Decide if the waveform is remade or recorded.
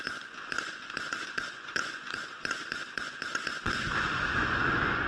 remade